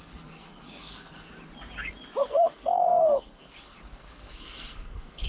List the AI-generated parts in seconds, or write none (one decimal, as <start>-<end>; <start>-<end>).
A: 0.0-1.3; 2.2-5.3